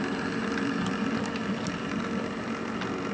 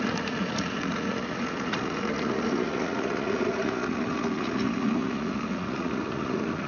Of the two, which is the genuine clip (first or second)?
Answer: first